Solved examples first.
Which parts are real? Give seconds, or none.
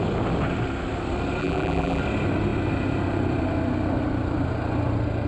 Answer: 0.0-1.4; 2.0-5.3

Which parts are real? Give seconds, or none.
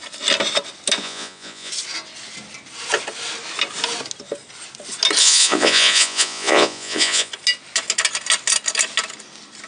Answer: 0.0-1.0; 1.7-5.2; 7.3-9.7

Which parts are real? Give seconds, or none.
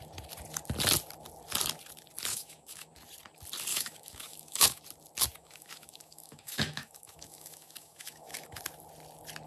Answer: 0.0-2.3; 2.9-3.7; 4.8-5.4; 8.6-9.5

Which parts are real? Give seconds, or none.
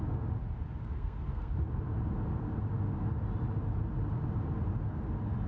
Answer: 0.0-0.8; 1.5-5.5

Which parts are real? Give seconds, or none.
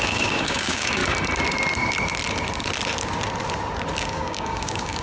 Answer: 1.0-4.0